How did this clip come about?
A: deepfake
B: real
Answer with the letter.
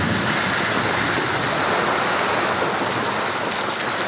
B